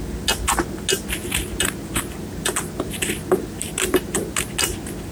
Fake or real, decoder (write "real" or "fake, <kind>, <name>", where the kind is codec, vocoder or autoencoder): real